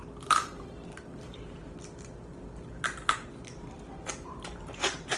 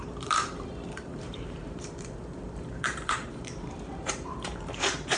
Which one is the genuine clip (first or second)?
first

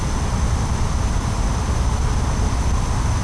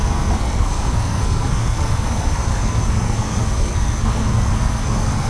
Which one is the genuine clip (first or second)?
first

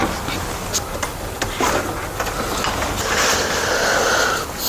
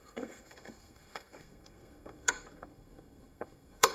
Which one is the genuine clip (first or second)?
first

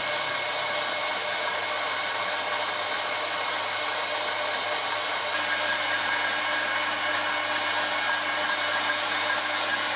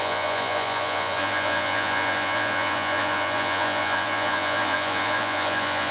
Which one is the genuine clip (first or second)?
first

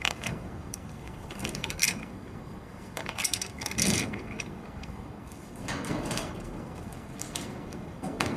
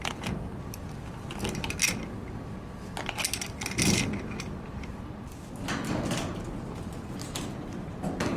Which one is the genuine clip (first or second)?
second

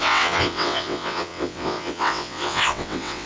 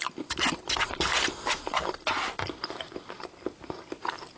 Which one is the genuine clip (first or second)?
second